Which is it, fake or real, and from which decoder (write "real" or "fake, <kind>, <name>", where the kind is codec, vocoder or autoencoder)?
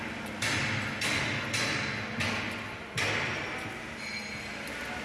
real